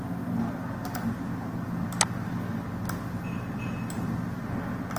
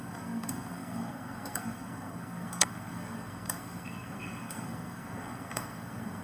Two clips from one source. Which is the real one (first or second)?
first